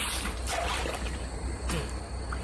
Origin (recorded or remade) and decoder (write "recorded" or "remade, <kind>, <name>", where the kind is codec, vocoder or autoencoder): recorded